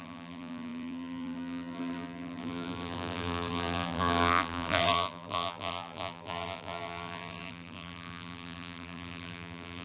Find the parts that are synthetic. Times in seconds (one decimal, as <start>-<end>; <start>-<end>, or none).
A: 0.0-9.8